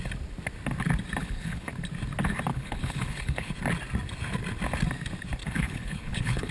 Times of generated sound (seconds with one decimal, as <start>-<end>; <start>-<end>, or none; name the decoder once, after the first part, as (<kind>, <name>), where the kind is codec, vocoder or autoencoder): 1.2-1.7 (codec, HILCodec); 2.5-3.5; 5.4-6.5